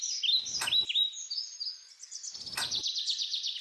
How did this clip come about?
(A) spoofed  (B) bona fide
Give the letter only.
B